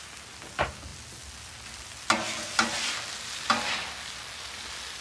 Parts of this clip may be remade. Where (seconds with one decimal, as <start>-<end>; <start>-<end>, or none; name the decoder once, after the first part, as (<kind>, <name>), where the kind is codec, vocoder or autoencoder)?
none